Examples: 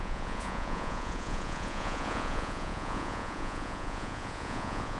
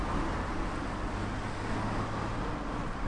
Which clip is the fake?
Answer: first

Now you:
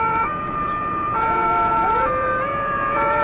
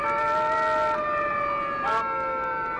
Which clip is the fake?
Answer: first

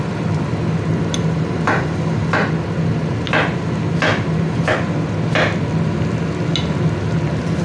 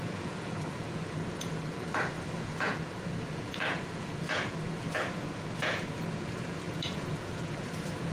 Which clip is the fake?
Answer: second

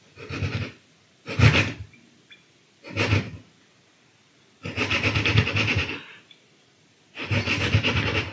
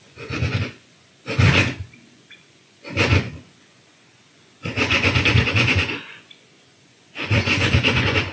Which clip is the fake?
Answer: second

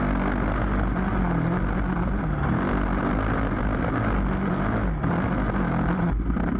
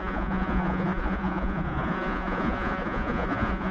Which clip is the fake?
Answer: second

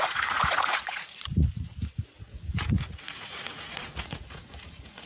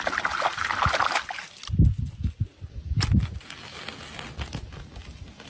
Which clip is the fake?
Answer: first